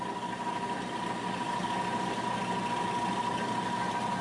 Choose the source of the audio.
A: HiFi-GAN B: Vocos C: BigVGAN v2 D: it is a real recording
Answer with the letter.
D